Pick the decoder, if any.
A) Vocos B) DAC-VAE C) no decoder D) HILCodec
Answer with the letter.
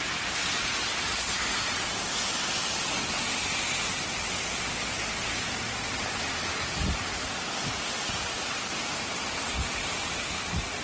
C